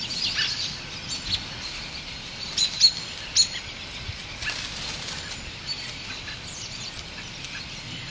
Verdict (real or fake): real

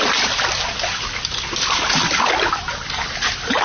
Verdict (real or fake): real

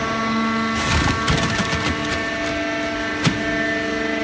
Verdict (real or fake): real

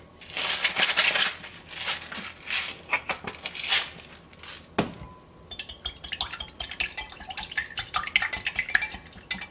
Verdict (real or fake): real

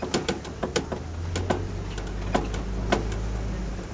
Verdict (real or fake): real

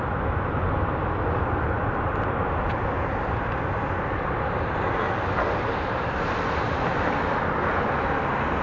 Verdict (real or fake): real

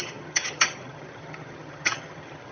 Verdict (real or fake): fake